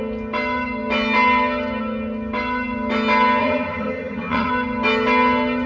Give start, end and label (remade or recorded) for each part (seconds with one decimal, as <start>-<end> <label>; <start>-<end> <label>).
0.0-3.4 recorded; 3.4-4.5 remade; 4.5-5.7 recorded

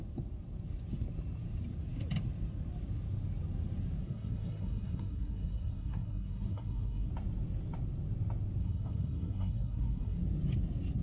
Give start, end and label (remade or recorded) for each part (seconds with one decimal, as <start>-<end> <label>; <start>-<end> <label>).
0.0-4.0 recorded; 4.0-7.1 remade; 7.1-8.6 recorded; 8.6-10.2 remade; 10.2-11.0 recorded